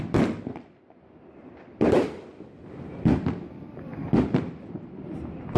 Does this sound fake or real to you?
fake